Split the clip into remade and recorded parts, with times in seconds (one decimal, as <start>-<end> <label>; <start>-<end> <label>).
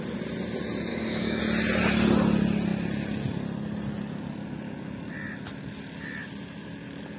0.0-0.9 recorded; 0.9-1.4 remade; 1.4-7.2 recorded